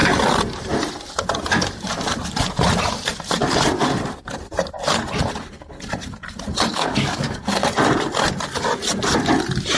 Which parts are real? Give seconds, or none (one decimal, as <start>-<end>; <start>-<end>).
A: 0.0-6.7; 7.4-9.8

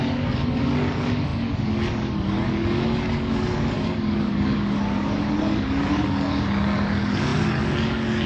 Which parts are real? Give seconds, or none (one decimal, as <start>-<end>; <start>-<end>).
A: none

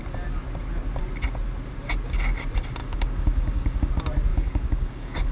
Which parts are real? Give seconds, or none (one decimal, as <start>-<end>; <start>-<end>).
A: 0.0-2.8; 3.9-4.3

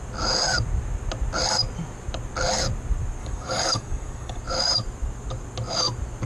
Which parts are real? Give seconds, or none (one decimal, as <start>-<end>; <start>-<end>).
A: 0.0-3.2; 4.4-6.3

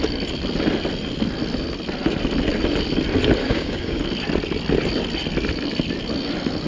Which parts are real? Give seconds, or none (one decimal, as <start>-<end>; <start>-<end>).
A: 0.0-3.4; 4.0-6.7

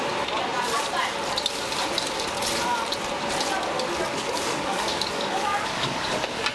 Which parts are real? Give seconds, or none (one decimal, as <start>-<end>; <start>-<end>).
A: 0.0-4.1